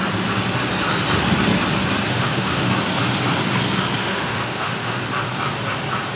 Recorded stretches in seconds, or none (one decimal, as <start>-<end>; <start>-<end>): 0.0-2.1; 2.7-4.0; 5.0-6.2